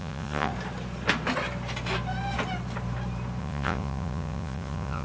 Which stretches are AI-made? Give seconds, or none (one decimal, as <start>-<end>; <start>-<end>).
0.0-0.5; 3.4-5.0